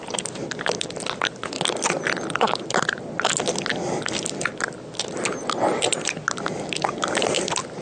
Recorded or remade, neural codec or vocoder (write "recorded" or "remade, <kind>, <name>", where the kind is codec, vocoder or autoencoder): recorded